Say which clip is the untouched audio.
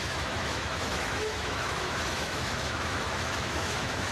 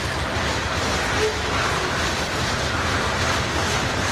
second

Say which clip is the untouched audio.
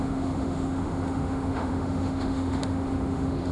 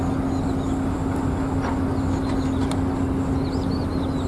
second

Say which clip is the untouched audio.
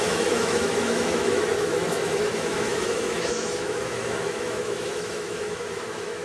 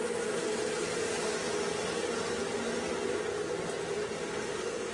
second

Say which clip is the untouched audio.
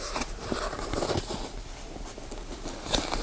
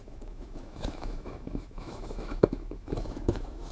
first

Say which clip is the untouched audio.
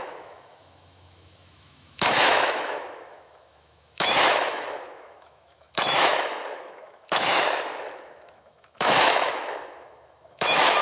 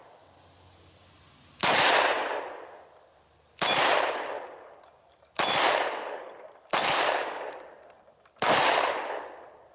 second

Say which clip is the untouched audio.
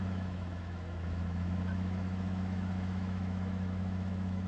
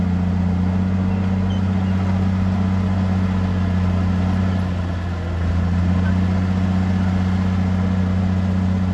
second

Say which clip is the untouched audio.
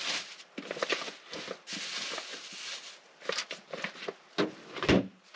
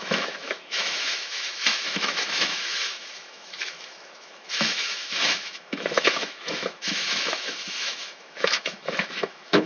first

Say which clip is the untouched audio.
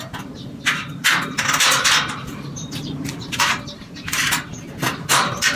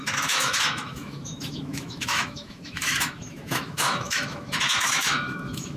first